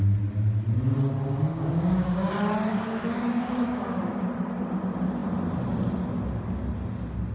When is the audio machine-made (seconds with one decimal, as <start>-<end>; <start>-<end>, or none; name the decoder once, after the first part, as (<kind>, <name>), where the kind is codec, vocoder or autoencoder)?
1.5-2.3 (codec, DAC); 2.7-4.1